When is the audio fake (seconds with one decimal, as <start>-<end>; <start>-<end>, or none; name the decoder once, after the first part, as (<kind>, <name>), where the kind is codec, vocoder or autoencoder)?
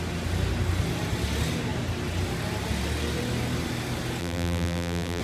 4.2-5.2 (vocoder, BigVGAN v2)